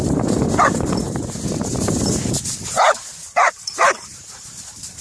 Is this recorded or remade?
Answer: remade